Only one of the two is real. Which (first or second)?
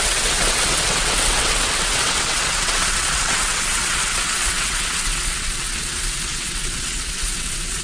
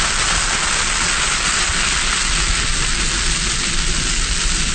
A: second